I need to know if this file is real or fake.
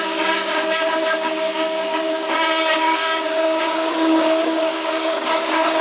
fake